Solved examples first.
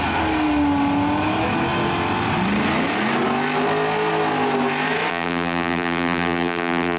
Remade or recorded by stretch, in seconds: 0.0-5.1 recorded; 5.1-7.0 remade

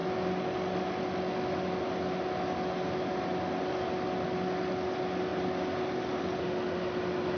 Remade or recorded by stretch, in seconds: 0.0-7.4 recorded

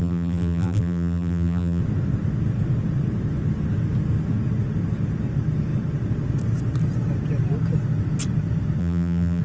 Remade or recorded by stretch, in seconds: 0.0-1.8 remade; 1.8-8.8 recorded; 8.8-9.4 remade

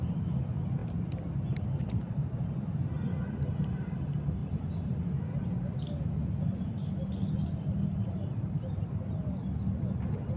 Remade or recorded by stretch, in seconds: 0.0-0.8 recorded; 0.8-3.9 remade; 3.9-4.4 recorded; 4.4-5.2 remade; 5.2-10.4 recorded

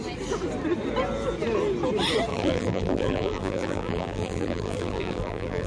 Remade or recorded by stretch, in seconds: 0.0-2.3 recorded; 2.3-5.7 remade

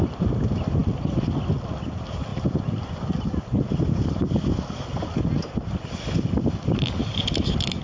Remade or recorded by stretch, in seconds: 0.0-7.8 recorded